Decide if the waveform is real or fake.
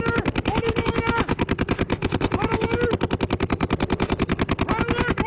real